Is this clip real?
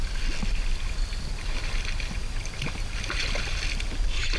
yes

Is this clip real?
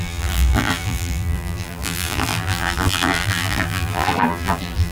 no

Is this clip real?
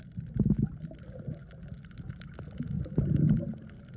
yes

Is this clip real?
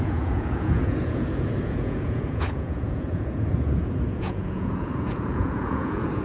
no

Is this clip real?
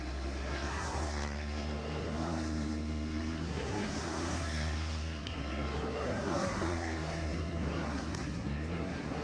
no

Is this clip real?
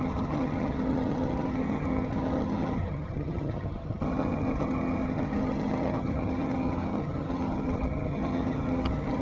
no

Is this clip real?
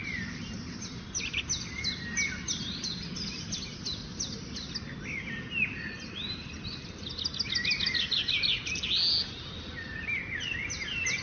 yes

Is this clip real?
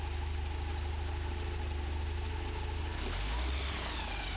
yes